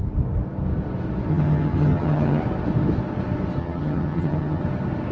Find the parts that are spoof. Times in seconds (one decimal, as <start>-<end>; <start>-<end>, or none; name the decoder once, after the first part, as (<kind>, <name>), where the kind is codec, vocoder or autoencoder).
1.3-2.4 (vocoder, HiFi-GAN); 3.6-4.6